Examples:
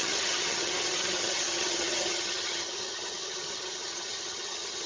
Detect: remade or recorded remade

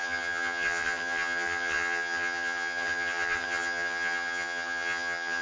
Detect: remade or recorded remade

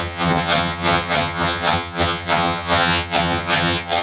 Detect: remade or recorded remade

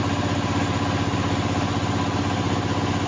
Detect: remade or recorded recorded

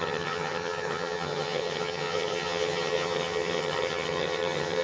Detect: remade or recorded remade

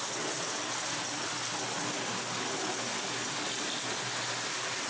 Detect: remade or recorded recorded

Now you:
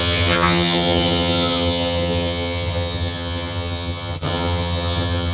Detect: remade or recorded remade